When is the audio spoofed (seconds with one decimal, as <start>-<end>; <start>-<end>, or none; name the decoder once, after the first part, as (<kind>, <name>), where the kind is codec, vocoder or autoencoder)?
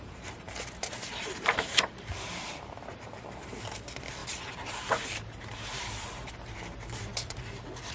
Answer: 0.0-7.9 (vocoder, BigVGAN v2)